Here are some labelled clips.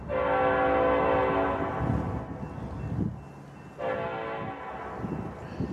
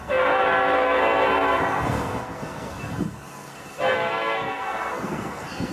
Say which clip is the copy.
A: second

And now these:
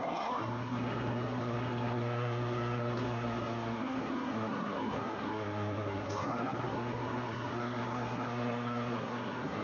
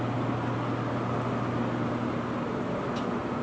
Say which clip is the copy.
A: first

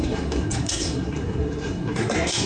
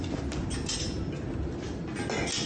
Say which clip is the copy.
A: first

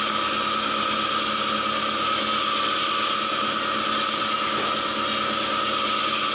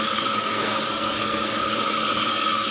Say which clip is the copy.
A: second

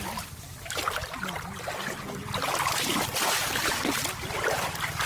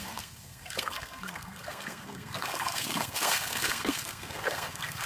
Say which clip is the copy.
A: second